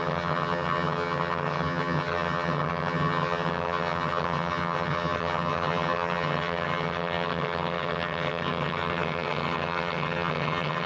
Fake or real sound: fake